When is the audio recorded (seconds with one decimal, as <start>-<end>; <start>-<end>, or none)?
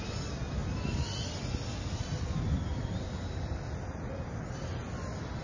0.0-5.4